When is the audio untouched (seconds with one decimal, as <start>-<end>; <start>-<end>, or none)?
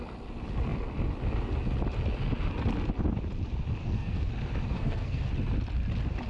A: 0.0-3.8; 4.3-4.7; 5.3-6.3